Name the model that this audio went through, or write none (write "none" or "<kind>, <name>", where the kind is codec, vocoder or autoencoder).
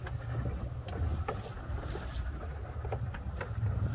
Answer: none